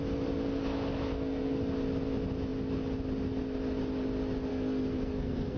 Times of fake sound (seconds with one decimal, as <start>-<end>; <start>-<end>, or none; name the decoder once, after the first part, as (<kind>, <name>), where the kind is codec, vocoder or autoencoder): 1.1-1.6 (codec, SNAC); 4.5-5.6